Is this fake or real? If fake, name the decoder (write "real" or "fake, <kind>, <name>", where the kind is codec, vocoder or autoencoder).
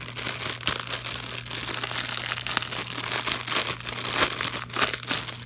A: real